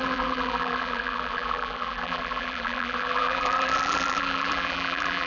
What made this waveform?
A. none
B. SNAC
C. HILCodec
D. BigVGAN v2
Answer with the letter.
D